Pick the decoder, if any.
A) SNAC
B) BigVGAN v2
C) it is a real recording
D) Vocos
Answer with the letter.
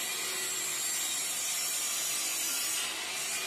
C